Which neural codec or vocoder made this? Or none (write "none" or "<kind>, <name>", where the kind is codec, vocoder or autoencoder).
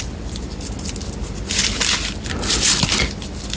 none